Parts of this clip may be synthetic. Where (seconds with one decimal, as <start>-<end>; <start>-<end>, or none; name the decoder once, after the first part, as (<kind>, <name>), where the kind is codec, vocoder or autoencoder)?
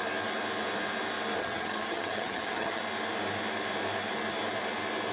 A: 1.4-2.8 (vocoder, HiFi-GAN)